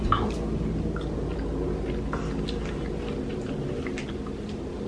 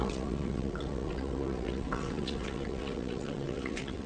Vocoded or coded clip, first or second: second